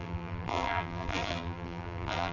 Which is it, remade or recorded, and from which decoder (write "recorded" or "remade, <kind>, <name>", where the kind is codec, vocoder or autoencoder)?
remade, vocoder, BigVGAN v2